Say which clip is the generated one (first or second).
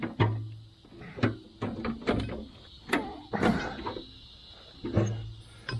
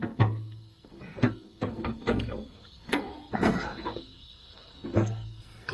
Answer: second